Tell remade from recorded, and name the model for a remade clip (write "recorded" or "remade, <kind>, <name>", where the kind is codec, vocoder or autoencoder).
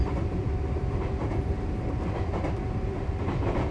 recorded